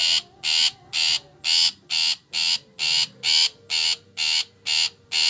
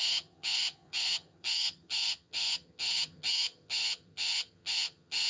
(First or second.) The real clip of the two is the first